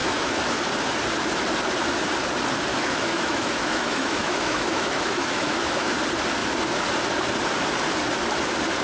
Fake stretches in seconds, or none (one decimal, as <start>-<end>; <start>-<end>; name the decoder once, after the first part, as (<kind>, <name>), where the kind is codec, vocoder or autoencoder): 0.0-0.6 (autoencoder, DAC-VAE); 2.7-5.9